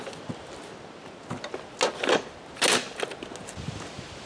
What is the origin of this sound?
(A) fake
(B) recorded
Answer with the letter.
B